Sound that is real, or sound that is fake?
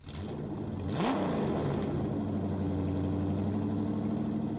real